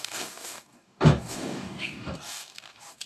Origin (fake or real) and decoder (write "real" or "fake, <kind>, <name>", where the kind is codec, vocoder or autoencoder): fake, codec, DAC